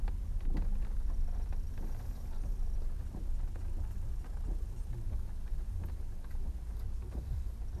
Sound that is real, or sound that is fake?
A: real